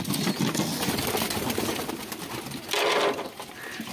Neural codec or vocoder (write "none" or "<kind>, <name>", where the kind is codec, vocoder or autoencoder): none